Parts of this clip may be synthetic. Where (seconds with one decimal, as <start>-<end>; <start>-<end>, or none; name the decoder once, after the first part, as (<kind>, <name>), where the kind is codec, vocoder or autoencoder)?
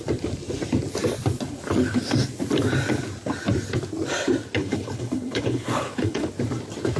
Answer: 4.6-6.3 (codec, HILCodec)